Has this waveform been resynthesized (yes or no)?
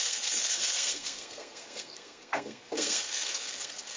yes